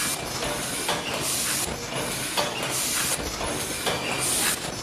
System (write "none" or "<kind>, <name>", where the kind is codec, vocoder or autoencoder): none